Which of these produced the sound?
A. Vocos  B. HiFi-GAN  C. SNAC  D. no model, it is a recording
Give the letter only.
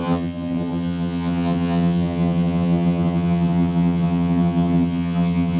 B